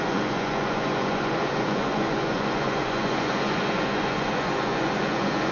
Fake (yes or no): yes